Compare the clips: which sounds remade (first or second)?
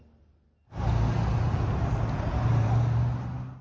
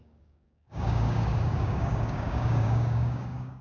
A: second